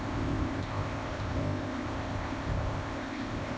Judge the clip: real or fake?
fake